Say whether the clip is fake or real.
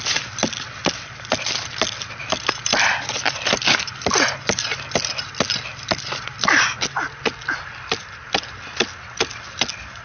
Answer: real